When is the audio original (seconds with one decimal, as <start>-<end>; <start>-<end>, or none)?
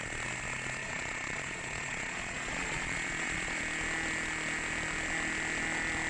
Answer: 0.0-0.8; 3.6-6.1